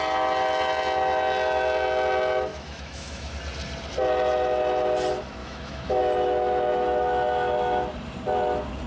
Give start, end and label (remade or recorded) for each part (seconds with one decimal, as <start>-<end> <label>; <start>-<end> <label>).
0.0-2.5 recorded; 2.5-3.3 remade; 3.3-5.4 recorded; 5.4-6.0 remade; 6.0-8.9 recorded